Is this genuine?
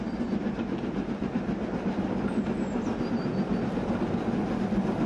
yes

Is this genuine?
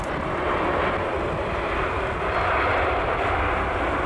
yes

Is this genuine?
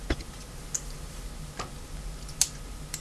yes